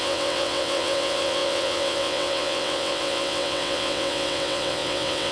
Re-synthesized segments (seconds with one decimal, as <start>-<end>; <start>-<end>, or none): 0.0-5.3